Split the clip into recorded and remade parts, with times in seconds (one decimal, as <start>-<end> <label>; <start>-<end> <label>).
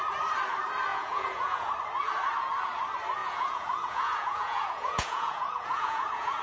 0.0-0.9 recorded; 0.9-1.7 remade; 1.7-3.2 recorded; 3.2-6.4 remade